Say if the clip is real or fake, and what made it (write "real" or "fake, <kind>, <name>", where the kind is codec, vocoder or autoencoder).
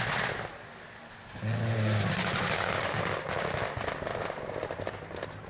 real